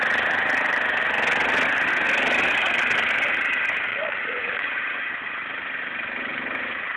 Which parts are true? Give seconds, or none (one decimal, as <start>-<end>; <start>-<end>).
0.0-3.9; 5.1-7.0